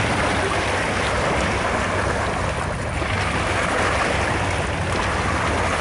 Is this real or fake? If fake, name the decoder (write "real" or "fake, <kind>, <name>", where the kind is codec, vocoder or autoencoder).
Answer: real